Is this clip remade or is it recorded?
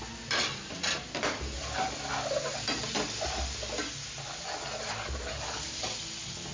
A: recorded